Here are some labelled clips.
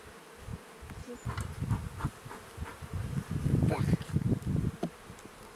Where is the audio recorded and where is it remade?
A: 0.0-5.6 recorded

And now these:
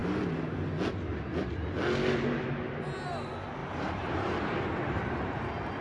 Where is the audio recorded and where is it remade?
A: 0.0-3.6 recorded; 3.6-5.8 remade

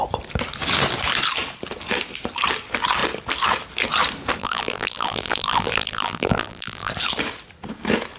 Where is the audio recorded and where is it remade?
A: 0.0-4.4 recorded; 4.4-6.9 remade; 6.9-8.2 recorded

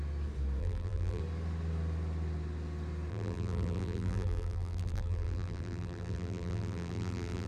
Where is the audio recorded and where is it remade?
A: 0.0-0.6 recorded; 0.6-1.2 remade; 1.2-3.1 recorded; 3.1-7.5 remade

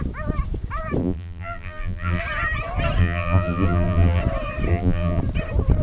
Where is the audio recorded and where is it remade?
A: 0.0-1.0 recorded; 1.0-2.2 remade; 2.2-3.0 recorded; 3.0-4.2 remade; 4.2-4.7 recorded; 4.7-5.2 remade; 5.2-5.8 recorded

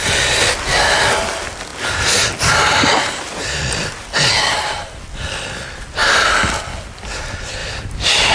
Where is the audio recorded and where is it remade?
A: 0.0-7.6 recorded; 7.6-8.3 remade